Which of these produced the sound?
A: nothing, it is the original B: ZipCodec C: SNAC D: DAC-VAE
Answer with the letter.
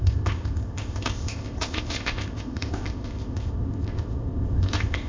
B